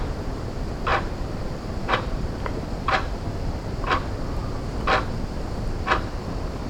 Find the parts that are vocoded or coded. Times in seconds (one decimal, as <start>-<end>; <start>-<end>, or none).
0.9-3.1